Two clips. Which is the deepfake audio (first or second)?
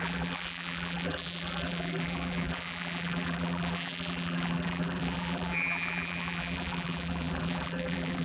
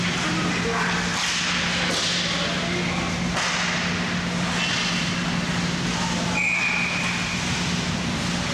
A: first